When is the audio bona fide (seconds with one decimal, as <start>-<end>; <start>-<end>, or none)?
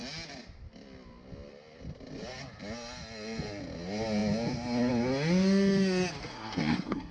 0.0-6.2